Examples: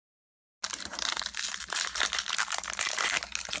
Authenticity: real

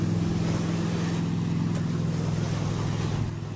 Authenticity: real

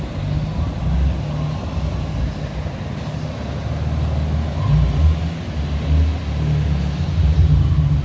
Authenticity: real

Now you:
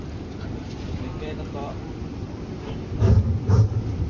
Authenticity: fake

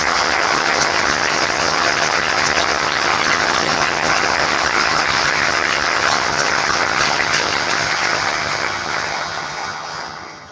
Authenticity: fake